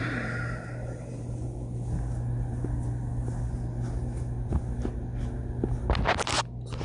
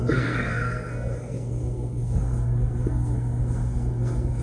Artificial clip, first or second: second